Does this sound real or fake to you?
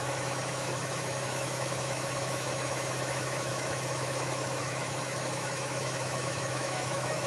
fake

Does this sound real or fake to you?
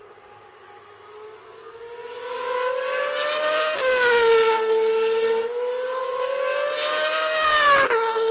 real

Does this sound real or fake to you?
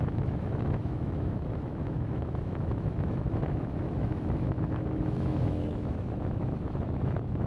fake